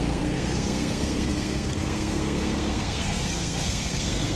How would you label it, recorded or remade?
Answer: remade